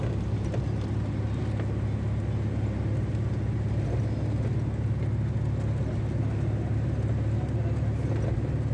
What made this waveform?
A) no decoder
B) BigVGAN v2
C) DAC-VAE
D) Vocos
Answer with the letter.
A